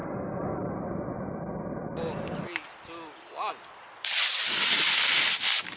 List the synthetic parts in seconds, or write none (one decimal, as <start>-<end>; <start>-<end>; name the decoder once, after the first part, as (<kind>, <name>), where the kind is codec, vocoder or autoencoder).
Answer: none